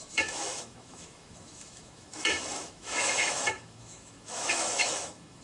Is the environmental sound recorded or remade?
remade